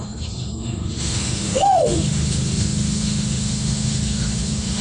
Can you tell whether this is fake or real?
fake